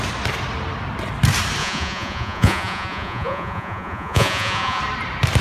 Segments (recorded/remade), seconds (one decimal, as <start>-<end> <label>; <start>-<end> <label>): 0.0-1.6 recorded; 1.6-4.8 remade; 4.8-5.4 recorded